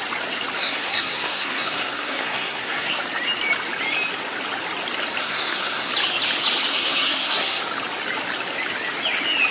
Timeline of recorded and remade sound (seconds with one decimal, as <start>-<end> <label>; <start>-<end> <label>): 0.0-0.6 recorded; 0.6-3.0 remade; 3.0-5.2 recorded; 5.2-5.9 remade; 5.9-6.7 recorded; 6.7-7.6 remade; 7.6-9.5 recorded